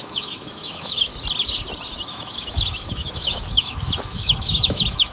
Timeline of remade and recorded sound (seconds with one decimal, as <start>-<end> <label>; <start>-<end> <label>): 0.0-1.1 remade; 1.1-2.1 recorded; 2.1-5.1 remade